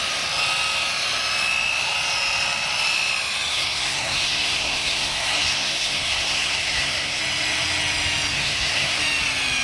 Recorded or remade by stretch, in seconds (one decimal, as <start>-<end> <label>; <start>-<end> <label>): 0.0-3.5 recorded; 3.5-7.2 remade; 7.2-8.3 recorded; 8.3-9.0 remade; 9.0-9.6 recorded